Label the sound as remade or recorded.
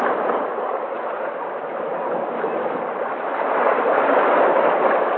recorded